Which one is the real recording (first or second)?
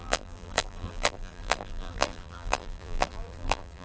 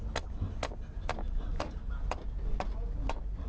second